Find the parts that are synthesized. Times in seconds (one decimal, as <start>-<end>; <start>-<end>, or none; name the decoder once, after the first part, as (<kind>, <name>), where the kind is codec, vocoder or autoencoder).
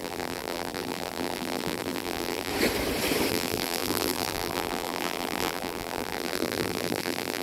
0.0-2.5 (vocoder, BigVGAN v2); 3.3-7.4